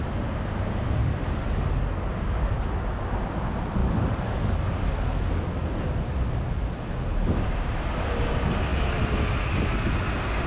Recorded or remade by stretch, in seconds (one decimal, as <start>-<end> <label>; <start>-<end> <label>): 0.0-1.0 recorded; 1.0-2.1 remade; 2.1-3.8 recorded; 3.8-5.3 remade; 5.3-10.5 recorded